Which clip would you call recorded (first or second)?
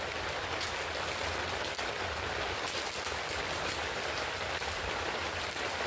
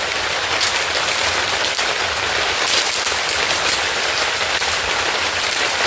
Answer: first